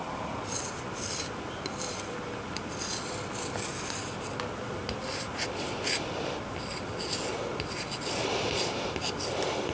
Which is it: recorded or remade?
recorded